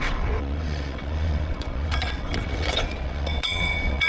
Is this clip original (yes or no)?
no